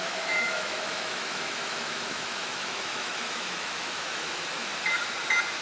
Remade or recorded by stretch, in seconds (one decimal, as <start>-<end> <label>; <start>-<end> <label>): 0.0-4.7 remade; 4.7-5.6 recorded